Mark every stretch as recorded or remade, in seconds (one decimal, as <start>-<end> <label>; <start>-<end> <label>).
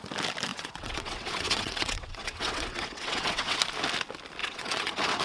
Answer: 0.0-0.5 recorded; 0.5-3.6 remade; 3.6-4.4 recorded; 4.4-5.2 remade